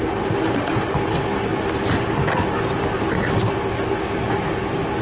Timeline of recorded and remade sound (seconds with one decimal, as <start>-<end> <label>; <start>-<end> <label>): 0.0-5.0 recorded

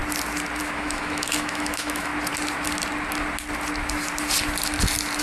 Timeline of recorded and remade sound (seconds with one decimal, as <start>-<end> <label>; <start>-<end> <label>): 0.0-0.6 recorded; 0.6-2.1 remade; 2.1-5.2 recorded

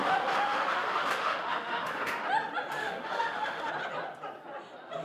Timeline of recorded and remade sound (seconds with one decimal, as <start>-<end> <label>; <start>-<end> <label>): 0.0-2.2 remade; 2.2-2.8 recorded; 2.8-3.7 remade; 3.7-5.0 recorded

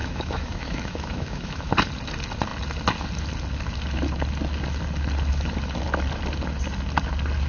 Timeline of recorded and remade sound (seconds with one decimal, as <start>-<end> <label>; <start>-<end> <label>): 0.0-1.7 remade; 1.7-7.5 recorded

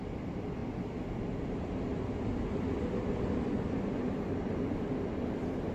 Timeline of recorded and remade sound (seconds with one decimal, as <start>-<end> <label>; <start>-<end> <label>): 0.0-5.7 recorded